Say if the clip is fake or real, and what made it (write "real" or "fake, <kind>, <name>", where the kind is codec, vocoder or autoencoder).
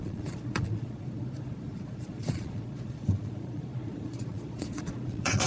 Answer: fake, vocoder, Vocos